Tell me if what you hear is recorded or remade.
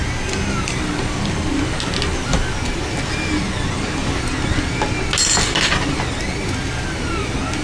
recorded